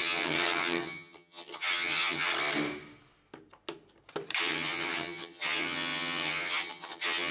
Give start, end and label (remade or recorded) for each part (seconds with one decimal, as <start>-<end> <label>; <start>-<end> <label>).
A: 0.0-2.3 remade; 2.3-4.4 recorded; 4.4-7.3 remade